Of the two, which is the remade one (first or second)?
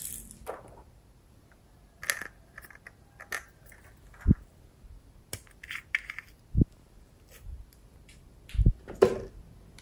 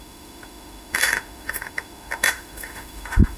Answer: second